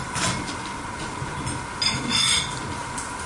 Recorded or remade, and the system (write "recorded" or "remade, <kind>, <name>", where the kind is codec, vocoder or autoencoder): recorded